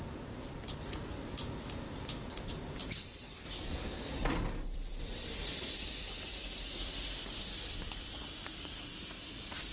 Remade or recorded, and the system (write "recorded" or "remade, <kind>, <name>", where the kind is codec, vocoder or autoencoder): remade, vocoder, BigVGAN v2